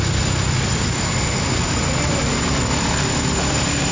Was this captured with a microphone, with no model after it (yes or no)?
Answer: yes